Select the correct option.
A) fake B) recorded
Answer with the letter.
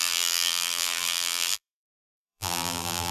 A